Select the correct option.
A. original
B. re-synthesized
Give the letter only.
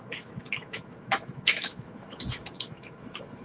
B